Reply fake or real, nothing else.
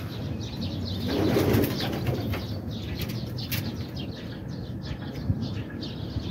real